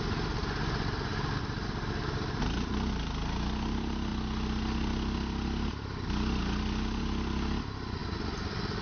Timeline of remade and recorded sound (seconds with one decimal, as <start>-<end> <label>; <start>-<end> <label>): 0.0-8.8 recorded